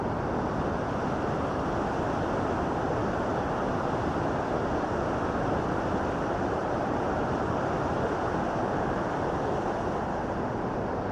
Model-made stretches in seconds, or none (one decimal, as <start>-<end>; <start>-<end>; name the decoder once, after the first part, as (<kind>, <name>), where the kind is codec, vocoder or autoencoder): 6.6-7.5 (vocoder, BigVGAN v2)